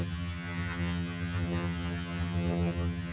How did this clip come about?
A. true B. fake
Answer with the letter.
B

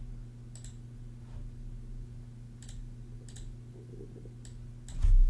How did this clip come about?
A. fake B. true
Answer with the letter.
B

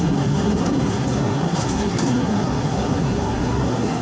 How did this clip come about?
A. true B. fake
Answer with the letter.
B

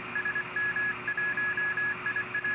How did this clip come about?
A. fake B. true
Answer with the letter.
B